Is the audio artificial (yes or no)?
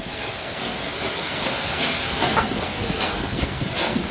yes